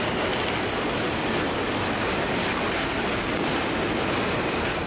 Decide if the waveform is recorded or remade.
recorded